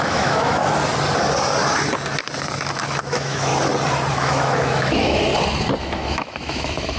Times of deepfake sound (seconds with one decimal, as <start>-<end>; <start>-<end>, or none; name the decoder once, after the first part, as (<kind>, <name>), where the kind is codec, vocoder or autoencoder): 0.0-0.6 (autoencoder, DAC-VAE); 3.0-3.5; 4.1-5.3; 5.8-7.0